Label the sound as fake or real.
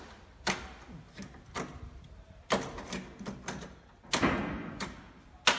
real